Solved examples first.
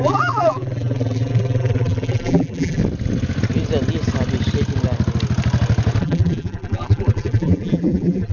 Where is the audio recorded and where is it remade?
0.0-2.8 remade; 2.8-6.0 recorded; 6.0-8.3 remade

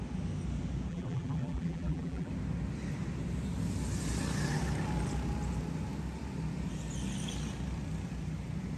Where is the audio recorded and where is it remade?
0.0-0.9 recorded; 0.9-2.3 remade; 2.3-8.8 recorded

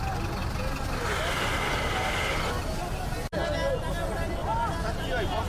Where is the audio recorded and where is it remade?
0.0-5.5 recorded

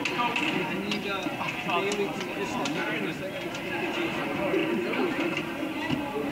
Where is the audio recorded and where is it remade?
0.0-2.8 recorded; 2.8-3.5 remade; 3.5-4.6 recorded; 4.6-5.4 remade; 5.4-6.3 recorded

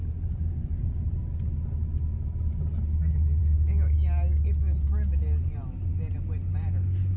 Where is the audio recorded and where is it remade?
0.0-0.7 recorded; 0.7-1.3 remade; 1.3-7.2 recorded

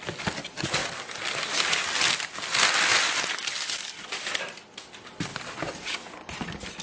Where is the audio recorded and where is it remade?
0.0-5.3 recorded; 5.3-6.3 remade; 6.3-6.8 recorded